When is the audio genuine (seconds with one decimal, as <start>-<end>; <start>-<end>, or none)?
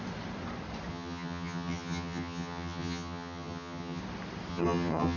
0.0-0.9; 4.0-4.5